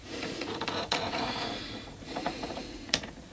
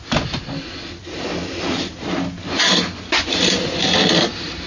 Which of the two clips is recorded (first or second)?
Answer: second